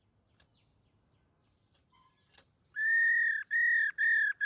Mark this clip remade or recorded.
recorded